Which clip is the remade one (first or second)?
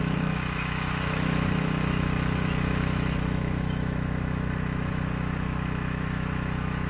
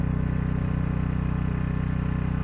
first